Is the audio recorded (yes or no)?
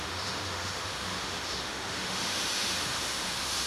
no